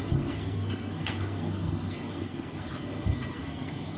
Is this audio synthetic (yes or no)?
yes